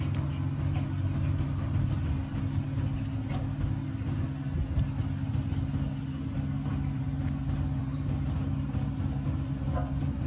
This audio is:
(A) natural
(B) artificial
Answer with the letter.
A